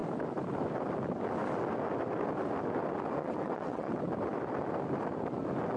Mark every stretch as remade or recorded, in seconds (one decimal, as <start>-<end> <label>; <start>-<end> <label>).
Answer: 0.0-3.2 recorded; 3.2-4.0 remade; 4.0-5.8 recorded